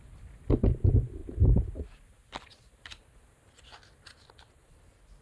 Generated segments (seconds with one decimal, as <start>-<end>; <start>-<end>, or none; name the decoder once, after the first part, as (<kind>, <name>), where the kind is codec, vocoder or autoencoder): none